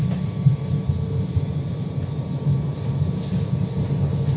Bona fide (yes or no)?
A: yes